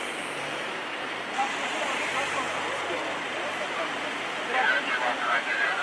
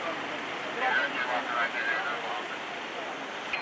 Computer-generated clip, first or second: first